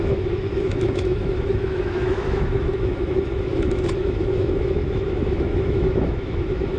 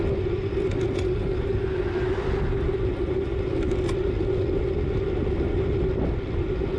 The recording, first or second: second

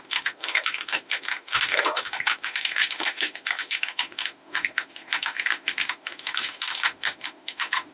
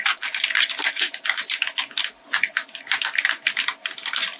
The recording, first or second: second